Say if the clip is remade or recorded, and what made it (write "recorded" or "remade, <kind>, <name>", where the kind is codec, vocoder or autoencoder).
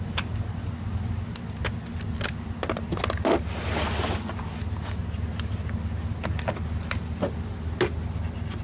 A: recorded